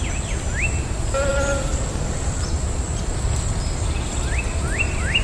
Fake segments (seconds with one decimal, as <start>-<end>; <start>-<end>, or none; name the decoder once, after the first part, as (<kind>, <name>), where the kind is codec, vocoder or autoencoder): none